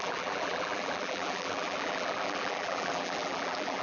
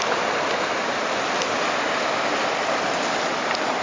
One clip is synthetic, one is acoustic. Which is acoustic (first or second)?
second